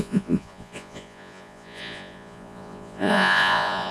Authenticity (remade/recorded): remade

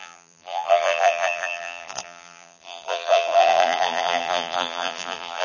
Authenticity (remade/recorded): remade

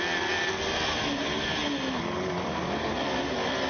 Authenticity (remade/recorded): recorded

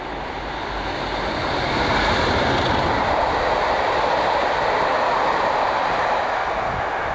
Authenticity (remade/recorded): recorded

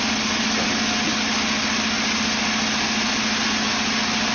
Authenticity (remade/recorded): recorded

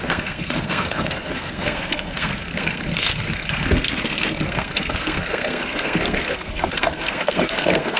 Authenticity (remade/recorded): remade